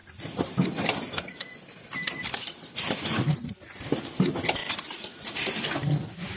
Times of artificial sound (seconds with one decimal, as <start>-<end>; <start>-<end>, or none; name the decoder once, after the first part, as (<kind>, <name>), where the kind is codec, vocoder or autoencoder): 0.0-3.5 (vocoder, BigVGAN v2); 4.6-5.7